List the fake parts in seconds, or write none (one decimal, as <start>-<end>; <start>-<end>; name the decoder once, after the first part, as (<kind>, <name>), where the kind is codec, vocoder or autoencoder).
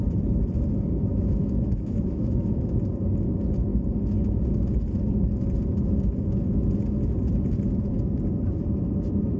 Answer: 1.1-2.7 (autoencoder, DAC-VAE)